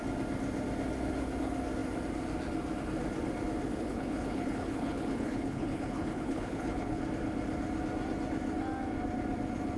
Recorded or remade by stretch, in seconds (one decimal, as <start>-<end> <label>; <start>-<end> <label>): 0.0-3.7 recorded; 3.7-7.0 remade; 7.0-9.8 recorded